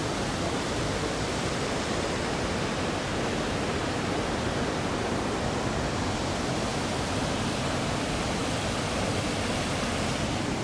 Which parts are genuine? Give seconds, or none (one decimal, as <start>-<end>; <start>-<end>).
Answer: 0.0-10.6